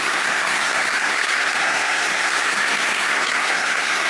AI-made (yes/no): yes